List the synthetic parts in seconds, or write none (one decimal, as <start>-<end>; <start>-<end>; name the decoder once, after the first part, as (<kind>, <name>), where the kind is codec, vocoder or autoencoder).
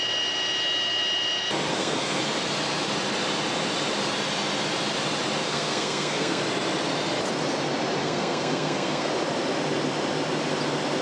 1.7-2.2 (codec, SNAC); 5.4-6.4; 8.0-9.1